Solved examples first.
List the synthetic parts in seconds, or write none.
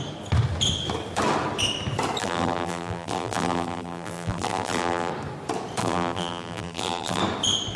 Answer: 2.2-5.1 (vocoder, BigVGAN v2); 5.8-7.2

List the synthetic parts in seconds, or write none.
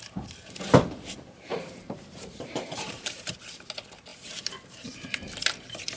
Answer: 1.5-3.0 (vocoder, BigVGAN v2); 4.1-5.3